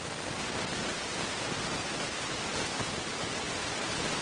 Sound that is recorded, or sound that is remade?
recorded